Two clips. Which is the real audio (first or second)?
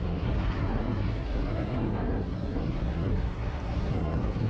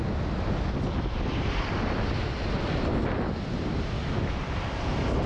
second